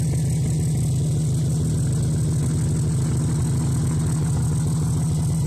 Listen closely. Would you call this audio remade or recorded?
recorded